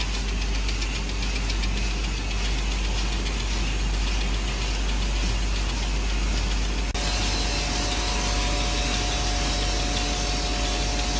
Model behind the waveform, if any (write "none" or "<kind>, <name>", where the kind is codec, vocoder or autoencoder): none